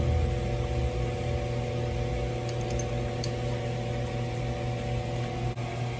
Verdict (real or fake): real